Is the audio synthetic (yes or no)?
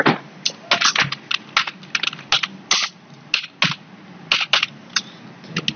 no